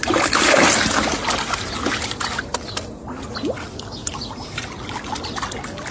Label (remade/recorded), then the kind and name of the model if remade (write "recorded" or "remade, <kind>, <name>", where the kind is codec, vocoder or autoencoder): recorded